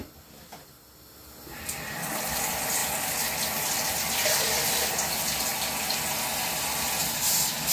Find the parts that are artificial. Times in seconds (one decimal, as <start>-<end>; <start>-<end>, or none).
none